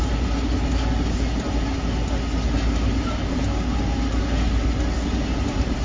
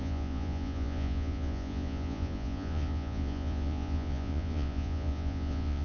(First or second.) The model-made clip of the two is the second